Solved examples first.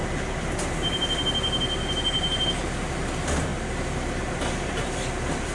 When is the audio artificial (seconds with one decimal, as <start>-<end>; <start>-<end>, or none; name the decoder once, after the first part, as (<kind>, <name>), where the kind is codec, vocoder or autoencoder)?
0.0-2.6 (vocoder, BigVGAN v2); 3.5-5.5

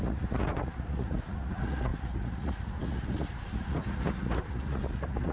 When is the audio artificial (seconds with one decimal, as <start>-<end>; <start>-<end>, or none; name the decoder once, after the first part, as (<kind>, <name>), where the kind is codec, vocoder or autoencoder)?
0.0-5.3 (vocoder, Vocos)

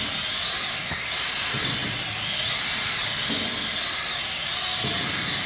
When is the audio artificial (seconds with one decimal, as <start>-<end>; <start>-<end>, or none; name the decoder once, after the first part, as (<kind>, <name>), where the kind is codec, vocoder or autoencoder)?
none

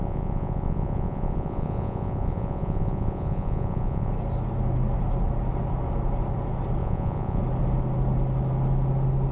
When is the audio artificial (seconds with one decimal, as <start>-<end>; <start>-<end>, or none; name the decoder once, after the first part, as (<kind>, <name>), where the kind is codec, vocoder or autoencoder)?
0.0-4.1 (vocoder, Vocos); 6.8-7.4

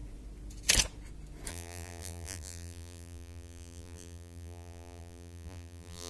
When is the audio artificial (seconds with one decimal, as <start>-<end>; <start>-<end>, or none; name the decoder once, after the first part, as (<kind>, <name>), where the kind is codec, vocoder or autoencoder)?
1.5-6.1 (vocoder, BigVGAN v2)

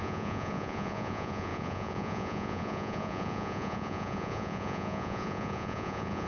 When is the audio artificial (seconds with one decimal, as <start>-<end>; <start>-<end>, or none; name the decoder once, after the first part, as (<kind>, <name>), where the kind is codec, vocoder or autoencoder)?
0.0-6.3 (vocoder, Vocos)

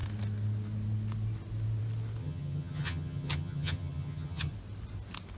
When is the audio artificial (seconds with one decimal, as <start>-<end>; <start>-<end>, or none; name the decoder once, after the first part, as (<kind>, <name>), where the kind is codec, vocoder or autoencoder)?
2.2-4.5 (vocoder, HiFi-GAN)

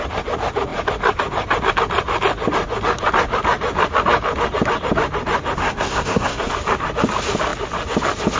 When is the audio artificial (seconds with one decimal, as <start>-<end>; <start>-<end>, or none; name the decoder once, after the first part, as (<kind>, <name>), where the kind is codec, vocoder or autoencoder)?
5.6-6.5 (codec, SNAC)